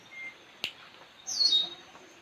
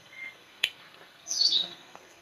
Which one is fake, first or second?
second